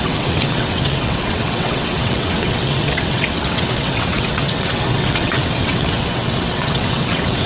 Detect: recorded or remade remade